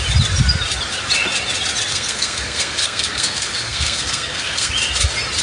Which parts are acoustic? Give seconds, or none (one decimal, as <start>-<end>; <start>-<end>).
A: 0.0-1.9; 4.7-5.4